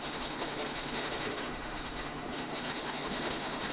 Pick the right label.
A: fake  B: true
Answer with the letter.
A